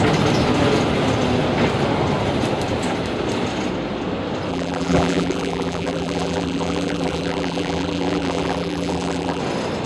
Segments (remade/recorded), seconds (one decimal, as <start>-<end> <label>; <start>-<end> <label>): 0.0-4.5 recorded; 4.5-9.4 remade; 9.4-9.9 recorded